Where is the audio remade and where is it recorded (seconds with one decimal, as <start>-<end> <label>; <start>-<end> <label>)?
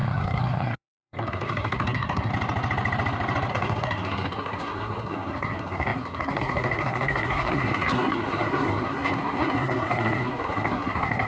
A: 0.0-2.3 remade; 2.3-3.5 recorded; 3.5-11.3 remade